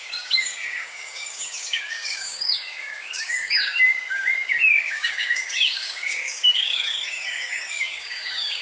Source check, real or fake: fake